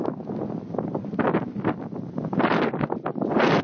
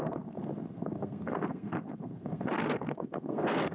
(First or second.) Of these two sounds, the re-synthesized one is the second